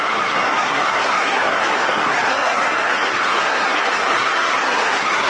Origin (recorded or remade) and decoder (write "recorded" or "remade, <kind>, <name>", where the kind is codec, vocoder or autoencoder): remade, codec, SNAC